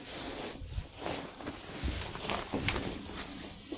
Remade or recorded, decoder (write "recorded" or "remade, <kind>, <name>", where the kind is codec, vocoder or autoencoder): recorded